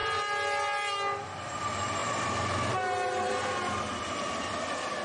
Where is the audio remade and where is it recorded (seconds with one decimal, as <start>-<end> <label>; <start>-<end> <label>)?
0.0-1.6 recorded; 1.6-2.0 remade; 2.0-3.9 recorded; 3.9-5.0 remade